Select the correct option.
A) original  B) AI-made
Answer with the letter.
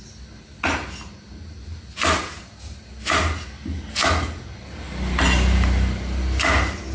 A